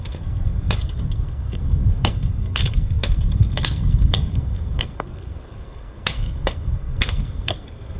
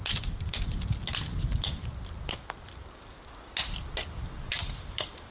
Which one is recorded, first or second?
second